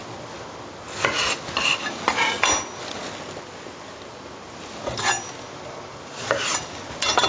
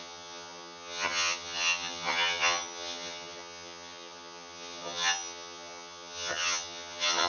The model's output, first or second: second